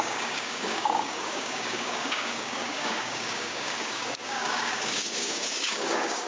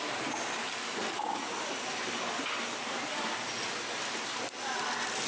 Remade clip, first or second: first